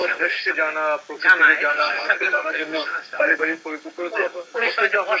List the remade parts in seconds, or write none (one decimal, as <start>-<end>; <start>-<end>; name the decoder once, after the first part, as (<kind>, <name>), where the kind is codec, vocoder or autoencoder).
0.0-0.5 (codec, SNAC); 1.7-4.8